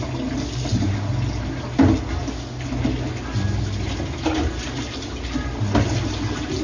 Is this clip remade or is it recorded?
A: recorded